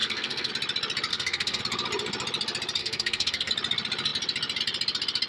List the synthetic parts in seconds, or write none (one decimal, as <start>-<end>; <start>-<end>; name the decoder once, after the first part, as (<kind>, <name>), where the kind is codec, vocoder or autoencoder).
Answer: 0.0-0.5 (codec, SNAC); 1.1-1.6; 2.8-3.5